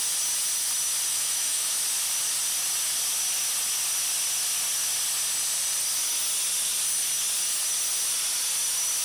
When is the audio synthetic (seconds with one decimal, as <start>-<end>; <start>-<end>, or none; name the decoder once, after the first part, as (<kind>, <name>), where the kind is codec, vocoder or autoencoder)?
1.1-1.7 (autoencoder, DAC-VAE)